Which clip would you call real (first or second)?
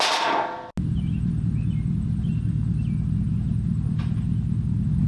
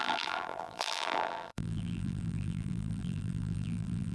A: first